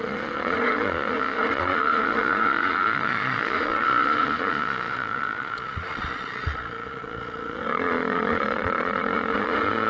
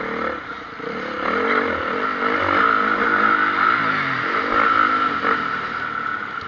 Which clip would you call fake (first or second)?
first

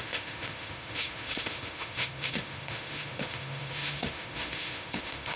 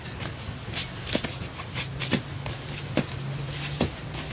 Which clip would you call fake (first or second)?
first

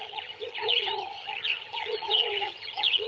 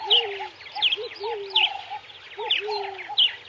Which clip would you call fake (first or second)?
first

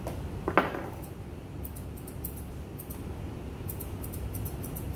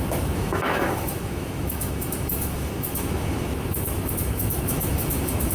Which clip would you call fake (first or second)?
second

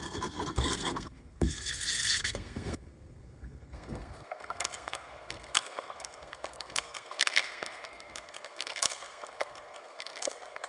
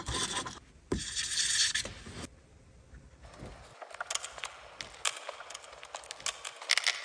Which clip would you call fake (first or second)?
first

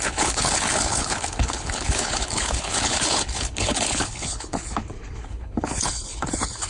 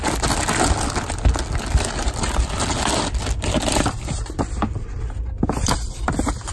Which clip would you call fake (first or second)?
first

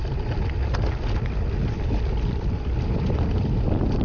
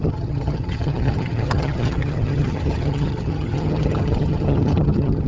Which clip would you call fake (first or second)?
second